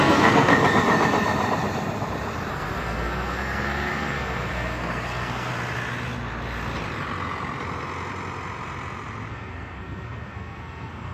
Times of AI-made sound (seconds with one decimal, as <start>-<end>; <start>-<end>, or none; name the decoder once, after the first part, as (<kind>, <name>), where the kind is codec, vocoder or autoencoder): 0.0-0.5 (codec, SNAC); 2.5-5.5; 9.3-11.1